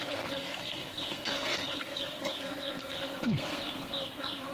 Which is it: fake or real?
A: fake